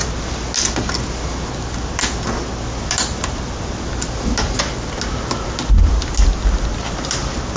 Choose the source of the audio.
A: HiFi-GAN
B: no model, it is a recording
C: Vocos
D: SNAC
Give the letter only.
B